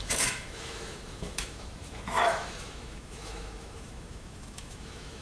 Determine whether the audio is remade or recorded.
remade